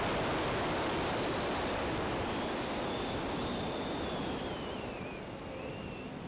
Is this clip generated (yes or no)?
no